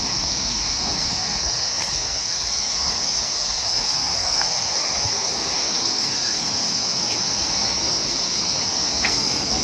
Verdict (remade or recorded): remade